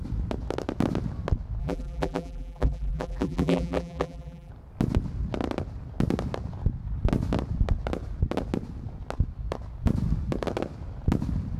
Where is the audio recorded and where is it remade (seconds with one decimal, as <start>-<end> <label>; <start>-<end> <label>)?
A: 0.0-1.6 recorded; 1.6-4.5 remade; 4.5-11.6 recorded